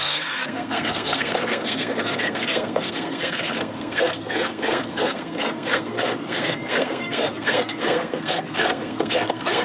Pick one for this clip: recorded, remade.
remade